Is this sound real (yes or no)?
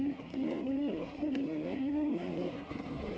no